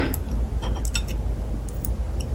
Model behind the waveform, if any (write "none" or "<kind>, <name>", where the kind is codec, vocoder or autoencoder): none